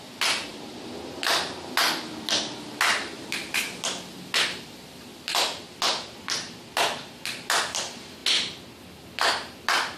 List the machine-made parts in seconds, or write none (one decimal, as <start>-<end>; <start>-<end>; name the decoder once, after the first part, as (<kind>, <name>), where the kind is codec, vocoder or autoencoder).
none